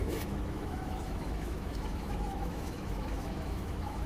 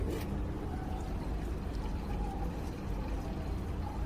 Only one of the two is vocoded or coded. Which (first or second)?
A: first